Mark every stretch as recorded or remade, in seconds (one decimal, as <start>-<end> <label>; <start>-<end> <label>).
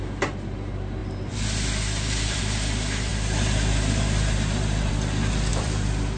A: 0.0-1.0 recorded; 1.0-2.4 remade; 2.4-5.5 recorded; 5.5-6.2 remade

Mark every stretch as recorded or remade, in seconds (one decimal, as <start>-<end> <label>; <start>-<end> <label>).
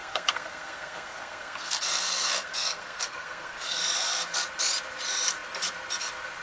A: 0.0-3.8 remade; 3.8-6.4 recorded